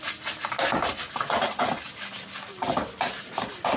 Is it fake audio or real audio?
real